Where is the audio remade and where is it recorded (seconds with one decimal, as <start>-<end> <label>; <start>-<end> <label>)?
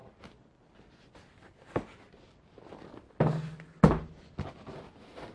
0.0-5.3 recorded